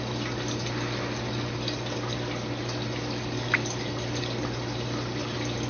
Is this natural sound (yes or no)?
yes